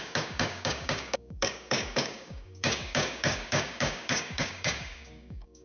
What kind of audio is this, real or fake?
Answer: fake